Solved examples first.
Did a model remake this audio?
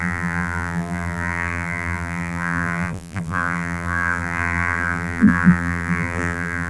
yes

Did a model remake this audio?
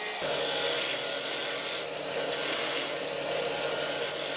no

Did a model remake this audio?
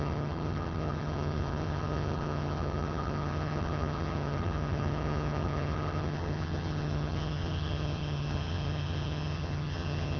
yes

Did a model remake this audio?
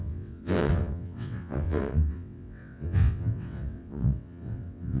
yes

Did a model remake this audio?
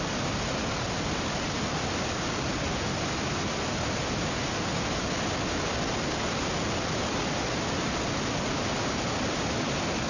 no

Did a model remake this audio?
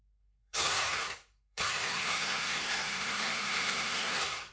yes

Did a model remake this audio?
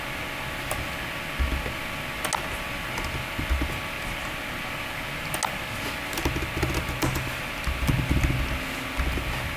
no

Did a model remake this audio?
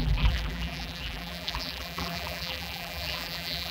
yes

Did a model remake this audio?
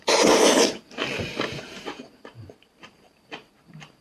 yes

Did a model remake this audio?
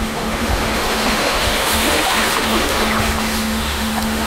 yes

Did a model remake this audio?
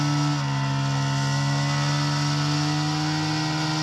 no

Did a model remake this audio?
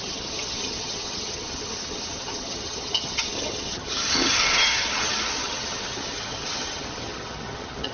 yes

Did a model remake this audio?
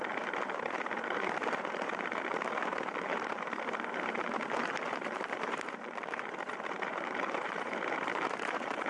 yes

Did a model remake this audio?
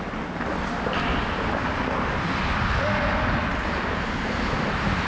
no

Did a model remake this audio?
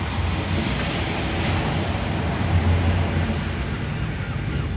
no